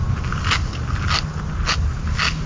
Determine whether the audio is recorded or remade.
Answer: recorded